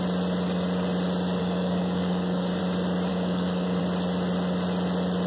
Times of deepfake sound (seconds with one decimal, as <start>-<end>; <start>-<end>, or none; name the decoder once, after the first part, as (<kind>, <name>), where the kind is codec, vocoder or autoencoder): 1.4-2.6 (codec, DAC); 3.1-3.8